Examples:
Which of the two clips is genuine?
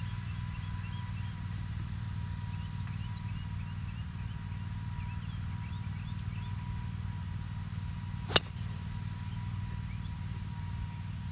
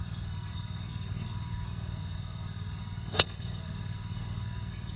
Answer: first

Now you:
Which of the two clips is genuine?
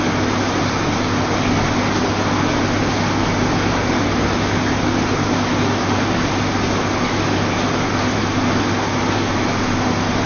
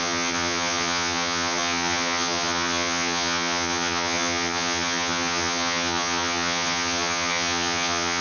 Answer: first